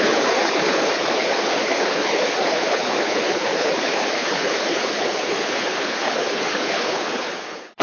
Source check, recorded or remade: remade